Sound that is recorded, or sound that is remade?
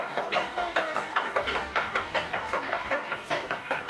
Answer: remade